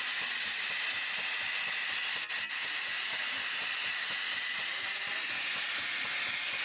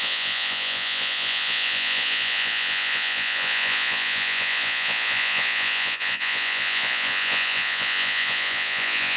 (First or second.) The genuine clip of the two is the first